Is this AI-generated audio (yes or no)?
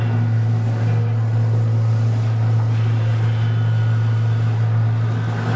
no